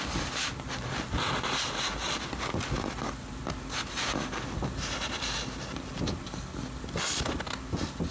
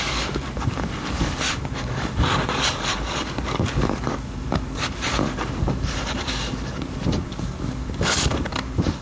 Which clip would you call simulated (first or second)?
second